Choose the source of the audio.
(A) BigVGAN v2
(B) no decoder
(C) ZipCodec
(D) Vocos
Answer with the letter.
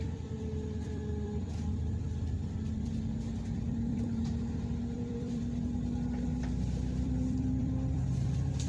A